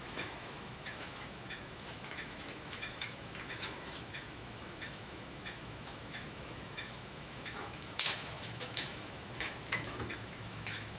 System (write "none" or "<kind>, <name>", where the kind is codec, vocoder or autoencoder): autoencoder, DAC-VAE